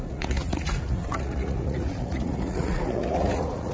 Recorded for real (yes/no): no